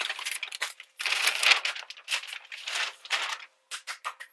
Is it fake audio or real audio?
real